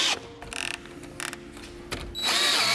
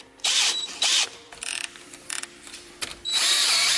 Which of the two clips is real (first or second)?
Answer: first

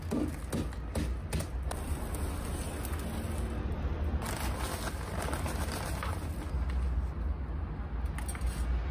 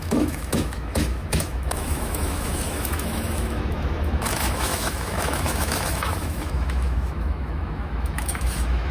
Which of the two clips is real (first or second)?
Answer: first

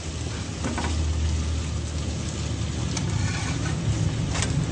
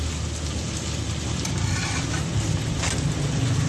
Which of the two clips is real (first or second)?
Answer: second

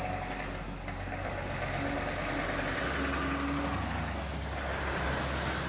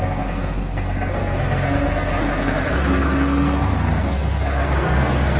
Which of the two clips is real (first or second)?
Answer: first